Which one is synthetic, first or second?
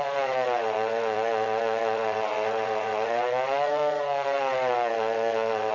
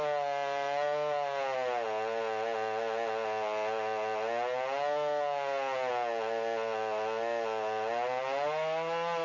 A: first